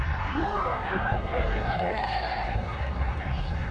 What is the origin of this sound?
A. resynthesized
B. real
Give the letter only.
A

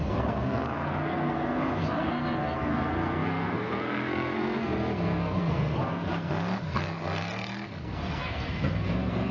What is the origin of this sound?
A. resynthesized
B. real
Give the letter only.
A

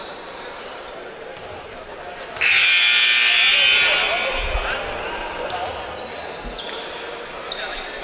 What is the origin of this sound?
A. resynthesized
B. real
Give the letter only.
B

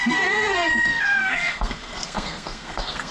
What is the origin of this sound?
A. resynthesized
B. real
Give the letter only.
A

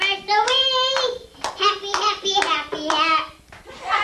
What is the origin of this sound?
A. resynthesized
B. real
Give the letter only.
B